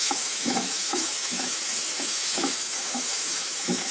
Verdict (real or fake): fake